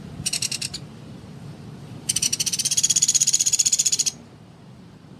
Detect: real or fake fake